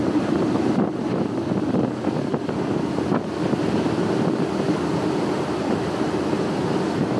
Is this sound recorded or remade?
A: recorded